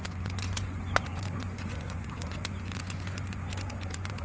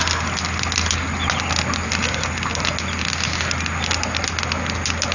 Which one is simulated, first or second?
first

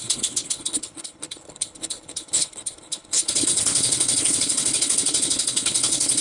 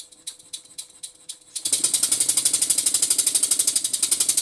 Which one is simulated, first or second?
first